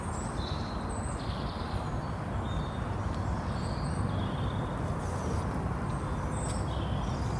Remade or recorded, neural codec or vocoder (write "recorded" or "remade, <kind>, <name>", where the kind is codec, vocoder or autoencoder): recorded